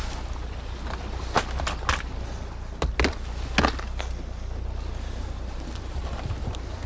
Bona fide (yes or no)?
yes